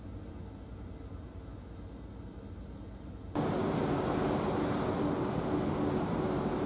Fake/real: real